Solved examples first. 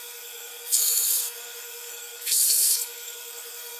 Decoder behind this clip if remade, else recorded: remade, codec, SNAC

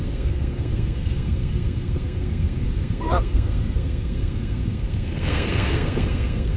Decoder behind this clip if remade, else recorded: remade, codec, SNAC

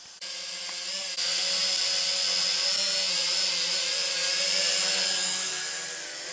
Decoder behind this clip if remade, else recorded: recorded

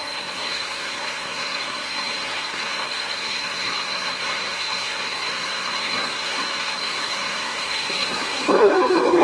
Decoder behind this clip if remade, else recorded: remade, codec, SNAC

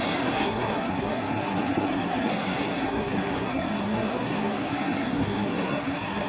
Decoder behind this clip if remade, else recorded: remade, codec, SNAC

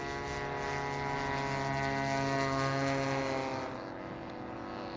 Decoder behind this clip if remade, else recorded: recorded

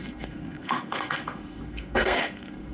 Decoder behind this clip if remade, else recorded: remade, codec, SNAC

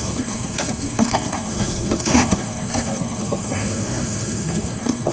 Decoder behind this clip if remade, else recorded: remade, codec, SNAC